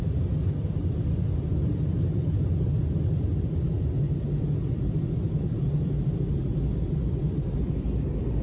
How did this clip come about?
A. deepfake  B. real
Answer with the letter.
B